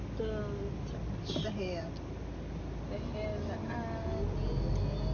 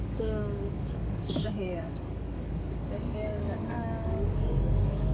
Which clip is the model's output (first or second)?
second